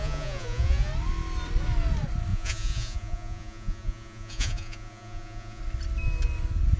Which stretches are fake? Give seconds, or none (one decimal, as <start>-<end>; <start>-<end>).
0.0-0.9; 2.3-5.6